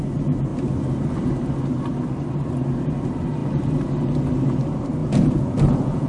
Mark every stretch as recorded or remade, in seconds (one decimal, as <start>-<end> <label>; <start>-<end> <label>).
0.0-5.0 recorded; 5.0-6.1 remade